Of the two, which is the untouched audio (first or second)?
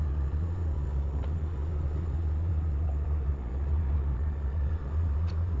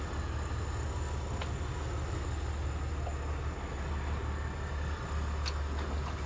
second